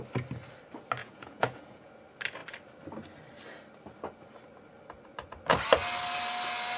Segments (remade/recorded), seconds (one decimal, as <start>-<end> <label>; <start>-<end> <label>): 0.0-1.0 recorded; 1.0-2.0 remade; 2.0-6.8 recorded